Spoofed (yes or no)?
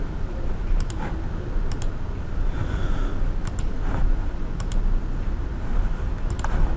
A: no